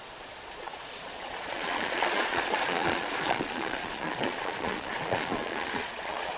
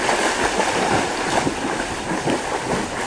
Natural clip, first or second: second